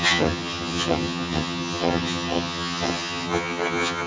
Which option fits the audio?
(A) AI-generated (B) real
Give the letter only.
A